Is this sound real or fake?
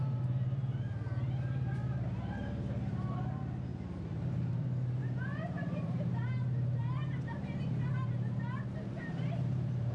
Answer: fake